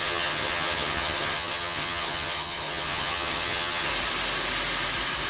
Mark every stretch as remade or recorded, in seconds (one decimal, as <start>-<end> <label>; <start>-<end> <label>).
0.0-3.9 remade; 3.9-5.3 recorded